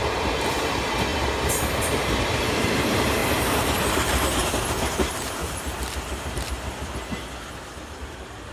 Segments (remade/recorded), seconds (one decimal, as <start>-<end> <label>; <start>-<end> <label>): 0.0-3.2 remade; 3.2-3.9 recorded; 3.9-4.4 remade; 4.4-8.0 recorded; 8.0-8.5 remade